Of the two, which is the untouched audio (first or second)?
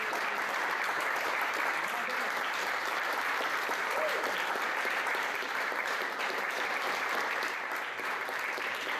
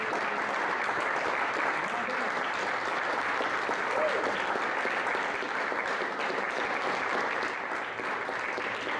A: second